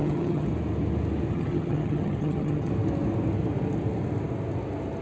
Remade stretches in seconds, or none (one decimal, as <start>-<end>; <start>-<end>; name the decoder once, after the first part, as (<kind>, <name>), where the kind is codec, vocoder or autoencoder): 0.0-0.5 (vocoder, HiFi-GAN); 1.3-2.7